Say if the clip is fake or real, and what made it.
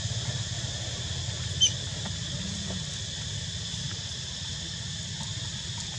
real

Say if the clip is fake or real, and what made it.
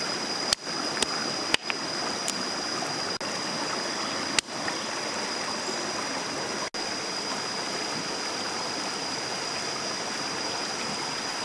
real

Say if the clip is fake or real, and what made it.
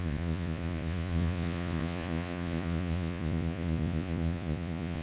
fake, vocoder, Vocos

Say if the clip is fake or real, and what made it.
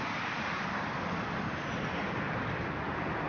real